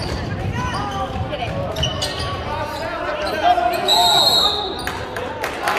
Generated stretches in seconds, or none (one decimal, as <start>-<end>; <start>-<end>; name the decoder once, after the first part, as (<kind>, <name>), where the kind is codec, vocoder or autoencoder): none